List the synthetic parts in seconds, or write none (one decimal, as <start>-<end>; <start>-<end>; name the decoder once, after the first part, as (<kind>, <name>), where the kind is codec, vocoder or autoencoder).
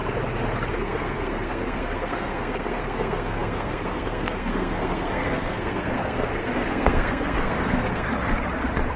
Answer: 0.7-8.1 (codec, SNAC)